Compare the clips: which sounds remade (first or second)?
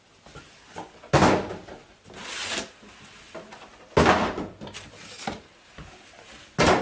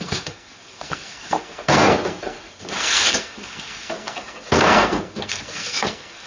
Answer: second